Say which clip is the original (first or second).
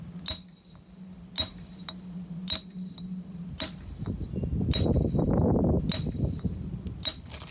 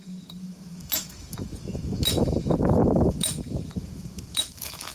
first